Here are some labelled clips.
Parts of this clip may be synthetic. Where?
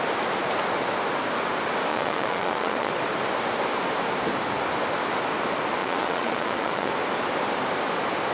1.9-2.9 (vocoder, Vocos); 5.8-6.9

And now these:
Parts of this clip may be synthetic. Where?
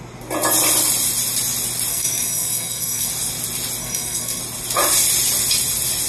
1.9-3.1 (codec, SNAC); 3.8-4.4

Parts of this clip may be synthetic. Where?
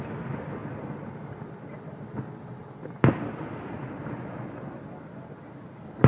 none